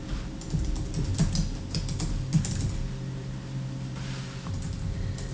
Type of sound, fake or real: real